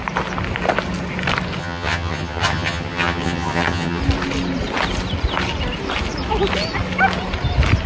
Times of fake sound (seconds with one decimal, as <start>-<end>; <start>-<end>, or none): 1.6-4.0